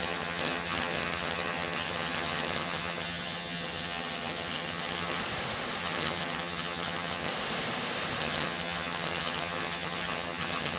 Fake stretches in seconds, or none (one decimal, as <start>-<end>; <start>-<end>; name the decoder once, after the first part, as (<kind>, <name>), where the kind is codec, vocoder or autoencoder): 0.0-5.2 (vocoder, HiFi-GAN); 5.8-7.3; 8.2-10.8